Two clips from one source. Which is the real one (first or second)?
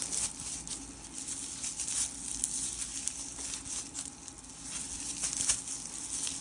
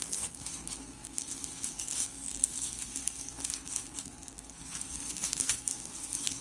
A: first